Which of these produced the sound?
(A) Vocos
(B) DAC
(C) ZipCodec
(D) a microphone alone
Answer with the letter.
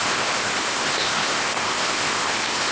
C